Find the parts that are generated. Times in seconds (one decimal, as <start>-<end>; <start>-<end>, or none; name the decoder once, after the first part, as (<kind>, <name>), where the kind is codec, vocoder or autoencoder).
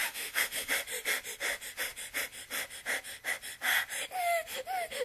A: 0.0-0.7 (autoencoder, DAC-VAE)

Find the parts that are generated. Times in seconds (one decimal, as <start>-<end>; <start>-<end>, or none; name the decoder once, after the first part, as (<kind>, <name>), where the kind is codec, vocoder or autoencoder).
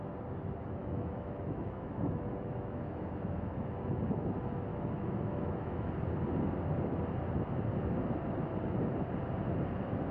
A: 0.8-4.2 (autoencoder, DAC-VAE); 4.7-5.9